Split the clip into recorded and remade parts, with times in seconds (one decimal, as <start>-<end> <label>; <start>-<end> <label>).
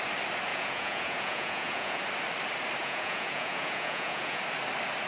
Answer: 0.0-0.5 recorded; 0.5-2.0 remade; 2.0-2.8 recorded; 2.8-4.4 remade; 4.4-5.1 recorded